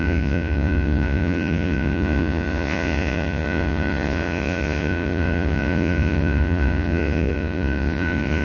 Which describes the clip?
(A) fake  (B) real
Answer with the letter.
A